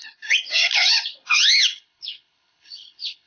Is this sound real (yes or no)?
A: no